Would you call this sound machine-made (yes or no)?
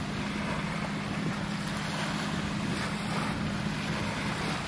no